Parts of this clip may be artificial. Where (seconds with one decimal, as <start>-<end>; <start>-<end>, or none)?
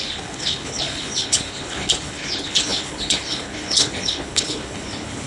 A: 0.0-5.3